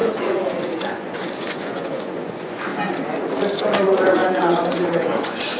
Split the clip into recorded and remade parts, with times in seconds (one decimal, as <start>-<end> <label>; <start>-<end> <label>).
0.0-2.7 remade; 2.7-3.8 recorded; 3.8-5.6 remade